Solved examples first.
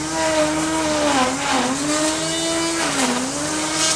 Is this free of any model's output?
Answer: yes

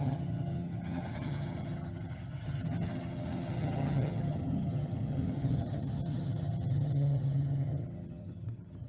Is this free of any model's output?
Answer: no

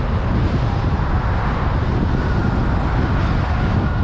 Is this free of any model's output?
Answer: yes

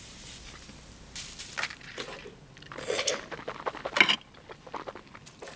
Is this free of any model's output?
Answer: yes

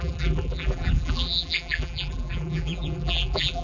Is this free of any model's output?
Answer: no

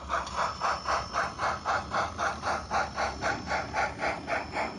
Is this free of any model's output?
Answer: yes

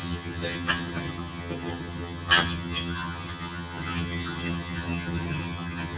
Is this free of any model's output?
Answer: no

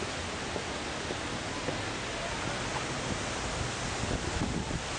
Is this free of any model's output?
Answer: yes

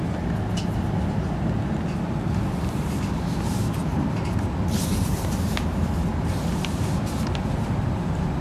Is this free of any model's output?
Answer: yes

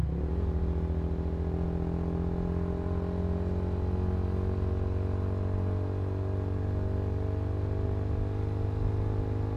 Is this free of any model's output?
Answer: yes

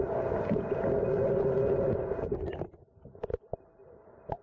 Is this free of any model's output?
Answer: yes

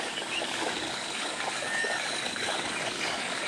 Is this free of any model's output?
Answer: no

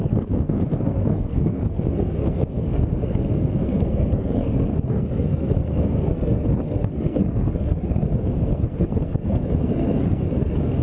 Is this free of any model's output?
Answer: no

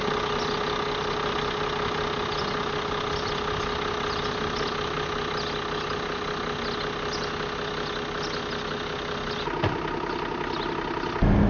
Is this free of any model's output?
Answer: yes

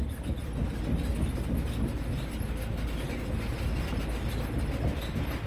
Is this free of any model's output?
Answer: yes